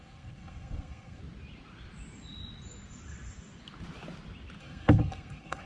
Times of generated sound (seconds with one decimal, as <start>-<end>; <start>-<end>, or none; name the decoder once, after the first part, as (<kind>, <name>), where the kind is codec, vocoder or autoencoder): 0.0-1.2 (codec, SNAC); 4.6-5.7